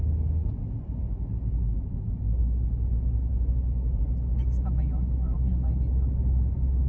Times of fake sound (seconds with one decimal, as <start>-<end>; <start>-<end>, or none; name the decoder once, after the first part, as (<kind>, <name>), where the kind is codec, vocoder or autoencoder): none